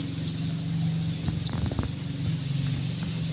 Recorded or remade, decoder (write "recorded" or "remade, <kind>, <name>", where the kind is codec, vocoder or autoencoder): recorded